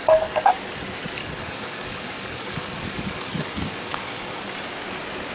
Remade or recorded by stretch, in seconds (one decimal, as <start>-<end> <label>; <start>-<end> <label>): 0.0-0.5 remade; 0.5-1.2 recorded; 1.2-4.4 remade; 4.4-5.3 recorded